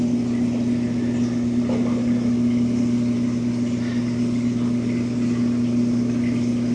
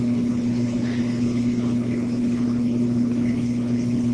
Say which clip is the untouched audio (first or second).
first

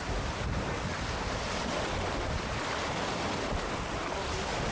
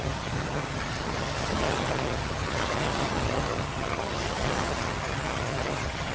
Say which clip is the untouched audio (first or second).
first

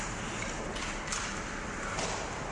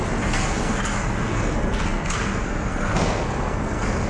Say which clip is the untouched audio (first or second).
first